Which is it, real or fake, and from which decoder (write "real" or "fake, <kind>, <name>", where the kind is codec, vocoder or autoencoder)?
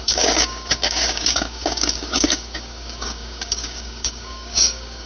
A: fake, codec, DAC